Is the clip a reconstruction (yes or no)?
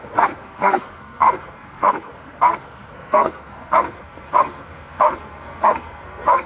yes